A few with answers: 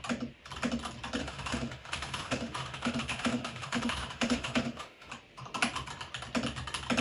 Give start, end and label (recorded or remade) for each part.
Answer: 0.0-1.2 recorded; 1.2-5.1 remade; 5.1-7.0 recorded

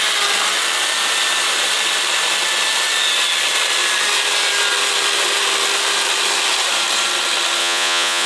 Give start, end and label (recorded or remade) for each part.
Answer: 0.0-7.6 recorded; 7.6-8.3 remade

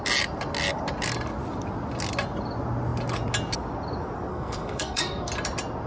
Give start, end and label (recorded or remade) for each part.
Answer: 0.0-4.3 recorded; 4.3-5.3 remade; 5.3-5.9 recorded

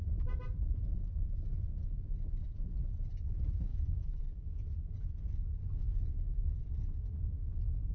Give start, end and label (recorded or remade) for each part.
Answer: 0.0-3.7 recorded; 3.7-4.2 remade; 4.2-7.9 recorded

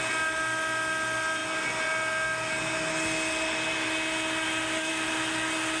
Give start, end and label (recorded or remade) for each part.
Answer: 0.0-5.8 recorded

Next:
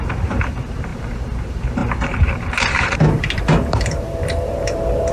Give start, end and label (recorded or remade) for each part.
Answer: 0.0-5.1 remade